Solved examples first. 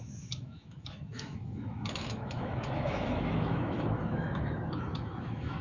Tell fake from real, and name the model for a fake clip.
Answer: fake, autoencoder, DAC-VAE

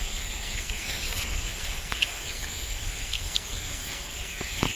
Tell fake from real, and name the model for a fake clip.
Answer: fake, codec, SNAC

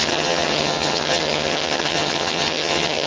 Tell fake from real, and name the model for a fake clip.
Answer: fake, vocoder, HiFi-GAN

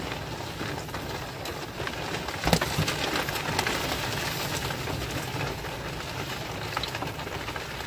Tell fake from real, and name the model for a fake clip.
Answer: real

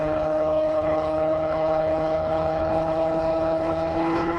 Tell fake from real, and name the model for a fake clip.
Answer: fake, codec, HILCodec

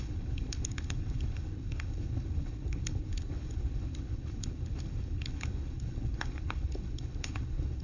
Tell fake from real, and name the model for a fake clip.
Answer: fake, codec, HILCodec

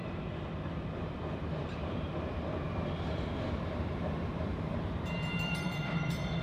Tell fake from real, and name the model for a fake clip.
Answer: fake, vocoder, BigVGAN v2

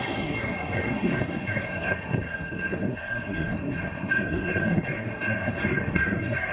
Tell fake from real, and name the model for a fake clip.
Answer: fake, codec, SNAC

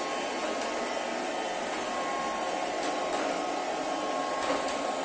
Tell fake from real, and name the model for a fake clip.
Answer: real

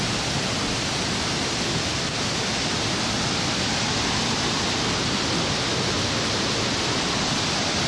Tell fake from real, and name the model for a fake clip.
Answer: real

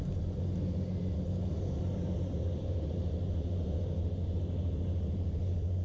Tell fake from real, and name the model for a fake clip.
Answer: real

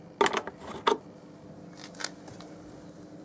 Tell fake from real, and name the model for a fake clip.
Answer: real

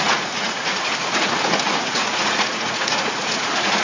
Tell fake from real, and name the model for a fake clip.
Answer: fake, vocoder, Vocos